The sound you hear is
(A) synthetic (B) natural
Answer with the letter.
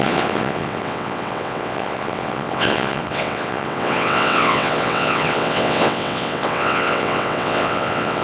A